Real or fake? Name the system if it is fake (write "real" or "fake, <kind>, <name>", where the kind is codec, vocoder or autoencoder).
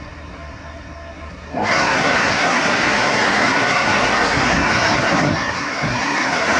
fake, codec, SNAC